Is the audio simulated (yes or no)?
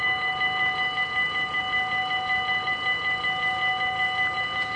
no